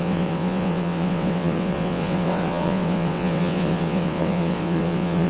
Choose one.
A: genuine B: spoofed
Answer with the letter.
B